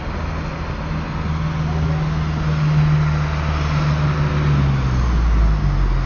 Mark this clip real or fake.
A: real